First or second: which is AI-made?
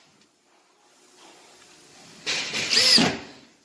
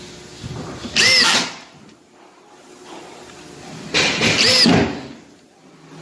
first